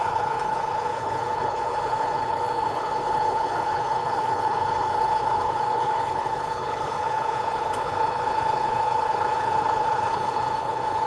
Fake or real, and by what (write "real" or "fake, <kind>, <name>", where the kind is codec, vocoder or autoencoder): fake, codec, HILCodec